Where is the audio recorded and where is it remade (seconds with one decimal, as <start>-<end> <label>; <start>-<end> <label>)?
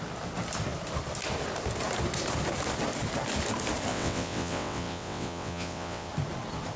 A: 0.0-3.9 recorded; 3.9-6.1 remade; 6.1-6.8 recorded